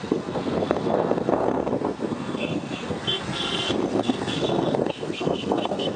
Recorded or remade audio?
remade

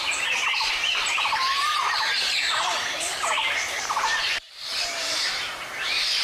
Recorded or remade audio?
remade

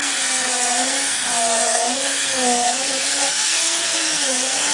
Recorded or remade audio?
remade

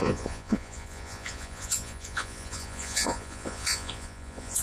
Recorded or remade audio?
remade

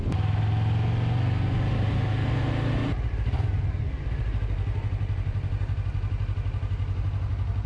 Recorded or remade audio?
recorded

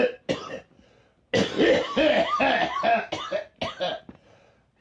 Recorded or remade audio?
recorded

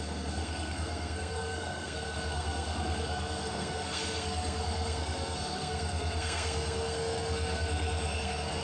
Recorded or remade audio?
remade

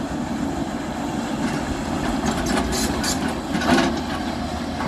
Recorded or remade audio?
recorded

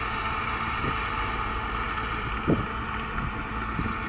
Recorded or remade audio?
remade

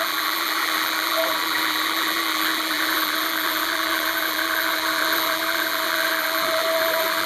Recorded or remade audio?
remade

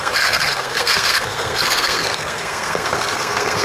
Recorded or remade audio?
remade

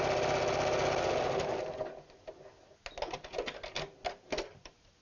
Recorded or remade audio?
recorded